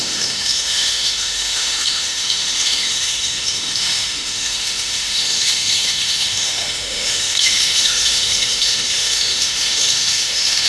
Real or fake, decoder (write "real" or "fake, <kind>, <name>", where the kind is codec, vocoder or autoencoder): fake, autoencoder, DAC-VAE